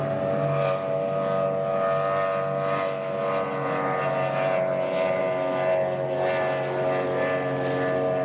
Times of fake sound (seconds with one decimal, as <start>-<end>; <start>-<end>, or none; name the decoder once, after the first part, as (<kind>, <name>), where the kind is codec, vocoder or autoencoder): none